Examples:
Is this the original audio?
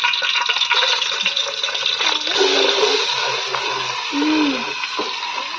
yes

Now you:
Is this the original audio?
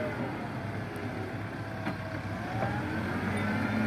yes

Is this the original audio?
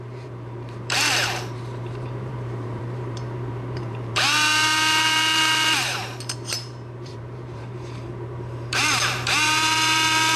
no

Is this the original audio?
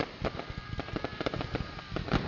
yes